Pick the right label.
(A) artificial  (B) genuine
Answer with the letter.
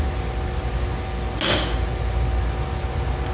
B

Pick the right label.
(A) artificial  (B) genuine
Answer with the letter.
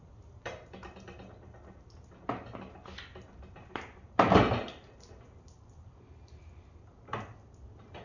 B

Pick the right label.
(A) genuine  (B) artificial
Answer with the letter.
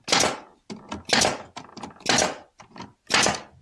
A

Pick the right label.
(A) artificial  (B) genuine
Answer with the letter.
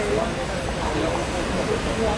B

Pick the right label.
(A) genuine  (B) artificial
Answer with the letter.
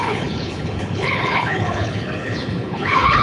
B